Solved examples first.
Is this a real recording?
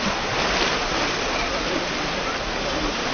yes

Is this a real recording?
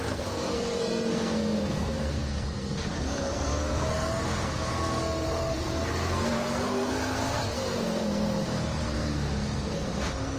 no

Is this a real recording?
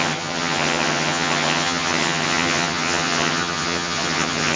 no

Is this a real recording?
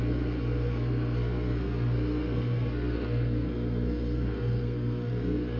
no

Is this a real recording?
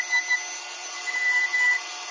yes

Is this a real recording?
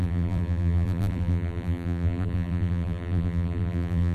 no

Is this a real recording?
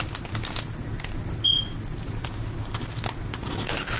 yes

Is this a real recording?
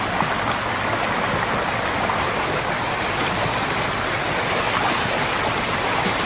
yes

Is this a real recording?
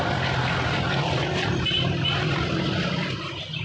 yes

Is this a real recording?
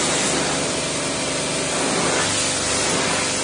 yes